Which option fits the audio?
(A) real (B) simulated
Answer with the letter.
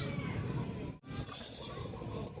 A